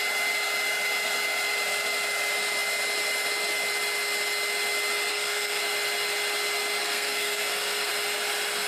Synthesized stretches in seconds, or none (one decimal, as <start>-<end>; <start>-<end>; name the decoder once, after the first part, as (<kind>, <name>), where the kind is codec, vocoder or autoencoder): 5.1-5.6 (codec, SNAC); 6.8-7.9